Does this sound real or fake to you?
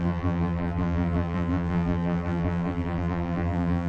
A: fake